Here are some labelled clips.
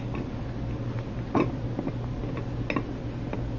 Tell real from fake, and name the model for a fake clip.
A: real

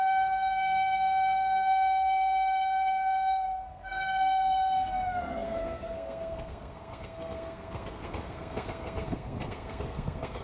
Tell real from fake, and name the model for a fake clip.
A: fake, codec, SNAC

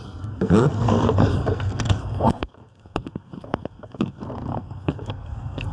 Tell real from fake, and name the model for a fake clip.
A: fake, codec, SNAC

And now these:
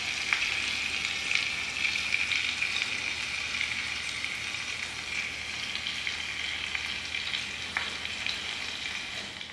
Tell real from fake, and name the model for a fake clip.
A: real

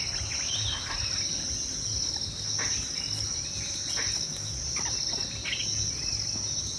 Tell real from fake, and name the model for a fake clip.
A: real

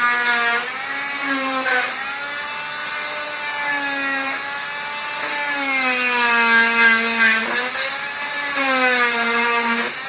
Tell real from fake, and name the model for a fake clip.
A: real